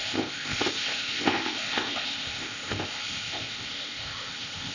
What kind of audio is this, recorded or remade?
remade